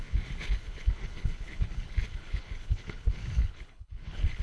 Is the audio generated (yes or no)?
yes